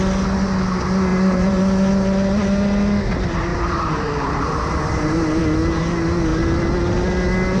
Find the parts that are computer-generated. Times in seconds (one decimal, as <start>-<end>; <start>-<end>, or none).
1.1-1.6; 3.5-5.4